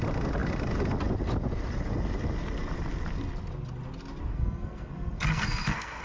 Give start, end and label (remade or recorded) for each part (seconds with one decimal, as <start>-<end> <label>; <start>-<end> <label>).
0.0-4.3 recorded; 4.3-6.0 remade

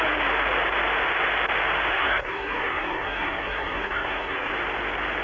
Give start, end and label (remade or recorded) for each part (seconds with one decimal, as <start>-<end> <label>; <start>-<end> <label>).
0.0-1.9 recorded; 1.9-4.5 remade; 4.5-5.2 recorded

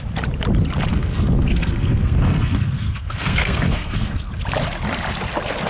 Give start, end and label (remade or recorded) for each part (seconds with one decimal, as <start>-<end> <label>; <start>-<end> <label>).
0.0-0.9 recorded; 0.9-4.3 remade; 4.3-5.7 recorded

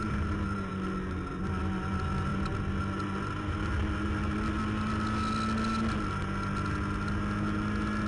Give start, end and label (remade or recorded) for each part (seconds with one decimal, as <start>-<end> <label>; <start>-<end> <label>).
0.0-8.1 recorded